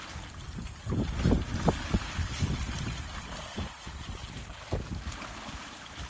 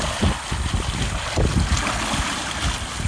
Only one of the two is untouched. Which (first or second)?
second